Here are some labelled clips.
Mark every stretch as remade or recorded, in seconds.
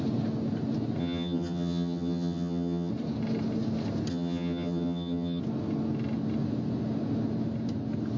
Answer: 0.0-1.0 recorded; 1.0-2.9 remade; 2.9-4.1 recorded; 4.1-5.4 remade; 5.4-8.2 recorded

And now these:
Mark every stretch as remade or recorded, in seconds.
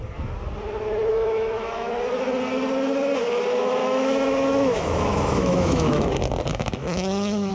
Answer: 0.0-1.1 recorded; 1.1-1.9 remade; 1.9-3.8 recorded; 3.8-6.1 remade; 6.1-6.5 recorded; 6.5-7.5 remade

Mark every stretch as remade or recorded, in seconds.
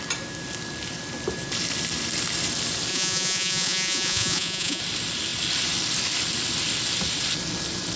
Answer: 0.0-2.9 recorded; 2.9-4.8 remade; 4.8-8.0 recorded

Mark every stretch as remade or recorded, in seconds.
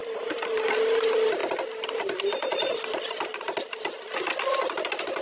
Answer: 0.0-5.2 recorded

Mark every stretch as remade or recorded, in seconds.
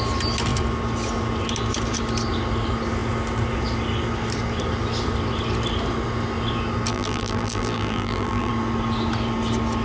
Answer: 0.0-6.9 recorded; 6.9-8.5 remade; 8.5-9.8 recorded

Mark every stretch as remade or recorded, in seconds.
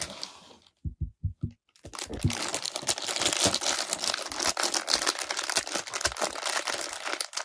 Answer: 0.0-7.4 recorded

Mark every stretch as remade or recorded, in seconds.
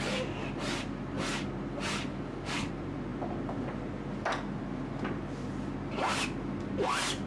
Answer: 0.0-2.1 recorded; 2.1-2.7 remade; 2.7-7.3 recorded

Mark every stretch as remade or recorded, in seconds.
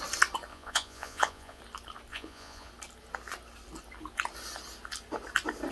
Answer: 0.0-0.5 recorded; 0.5-1.6 remade; 1.6-2.1 recorded; 2.1-2.7 remade; 2.7-5.7 recorded